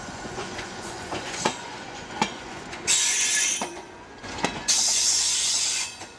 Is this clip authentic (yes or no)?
no